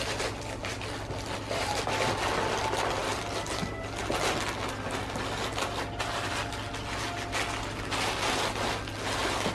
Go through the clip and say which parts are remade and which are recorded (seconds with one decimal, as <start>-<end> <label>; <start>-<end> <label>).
0.0-9.5 recorded